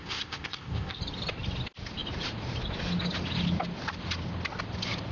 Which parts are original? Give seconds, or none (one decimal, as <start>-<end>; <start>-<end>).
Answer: 1.0-5.1